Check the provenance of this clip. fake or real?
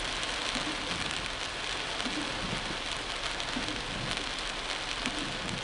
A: real